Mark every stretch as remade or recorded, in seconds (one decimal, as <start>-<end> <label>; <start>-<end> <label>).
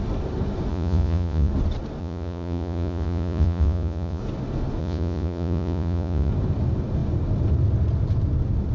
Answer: 0.0-0.7 recorded; 0.7-1.5 remade; 1.5-2.0 recorded; 2.0-4.2 remade; 4.2-4.8 recorded; 4.8-6.3 remade; 6.3-8.7 recorded